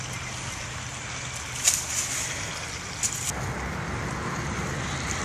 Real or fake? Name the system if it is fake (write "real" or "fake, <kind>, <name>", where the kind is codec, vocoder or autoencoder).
real